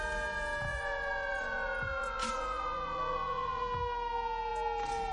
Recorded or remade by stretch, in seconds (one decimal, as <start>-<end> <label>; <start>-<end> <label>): 0.0-0.7 recorded; 0.7-3.6 remade; 3.6-5.1 recorded